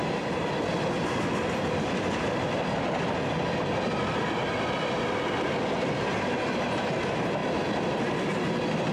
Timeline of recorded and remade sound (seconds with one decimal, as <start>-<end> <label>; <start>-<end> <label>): 0.0-7.4 recorded; 7.4-8.5 remade; 8.5-8.9 recorded